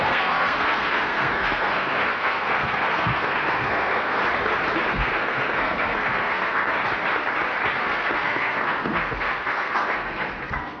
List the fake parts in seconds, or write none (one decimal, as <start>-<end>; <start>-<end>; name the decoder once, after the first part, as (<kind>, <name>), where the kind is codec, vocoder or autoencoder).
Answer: 0.0-4.2 (codec, SNAC); 4.9-6.8; 7.8-10.8